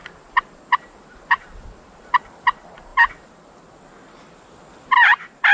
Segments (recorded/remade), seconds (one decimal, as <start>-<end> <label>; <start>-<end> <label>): 0.0-5.5 recorded